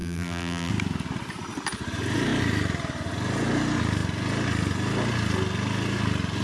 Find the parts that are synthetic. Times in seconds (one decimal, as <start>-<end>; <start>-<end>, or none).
0.0-0.7